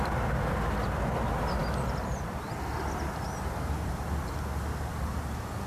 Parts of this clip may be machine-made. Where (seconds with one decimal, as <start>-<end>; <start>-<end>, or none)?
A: none